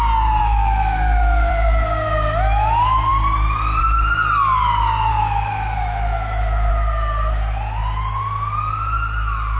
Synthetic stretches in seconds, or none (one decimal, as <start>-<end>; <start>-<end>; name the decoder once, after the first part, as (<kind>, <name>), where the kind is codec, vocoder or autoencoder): 0.4-1.5 (autoencoder, DAC-VAE); 5.1-6.7